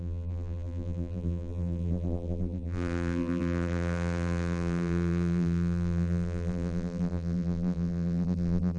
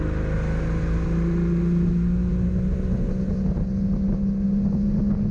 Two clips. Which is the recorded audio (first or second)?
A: second